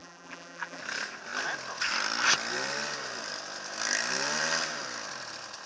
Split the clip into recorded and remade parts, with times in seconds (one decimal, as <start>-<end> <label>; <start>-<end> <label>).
0.0-0.8 remade; 0.8-5.7 recorded